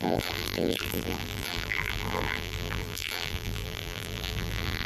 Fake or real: fake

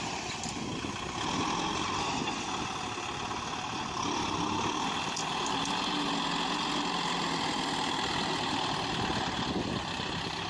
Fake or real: real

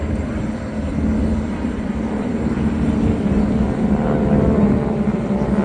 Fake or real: real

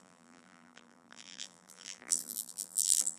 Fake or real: fake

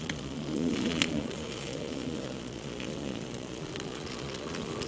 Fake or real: fake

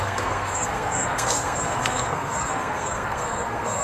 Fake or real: fake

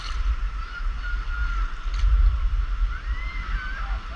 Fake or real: real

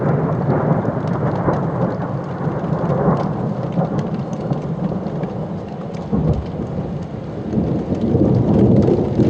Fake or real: fake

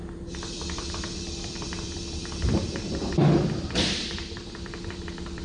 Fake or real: fake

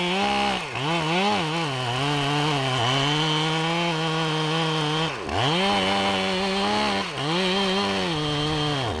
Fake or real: real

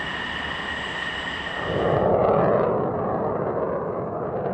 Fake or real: real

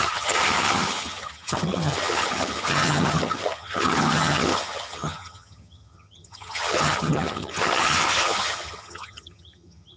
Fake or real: fake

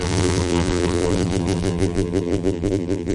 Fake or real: fake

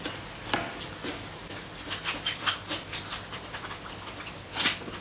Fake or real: real